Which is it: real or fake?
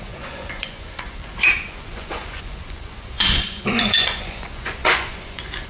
fake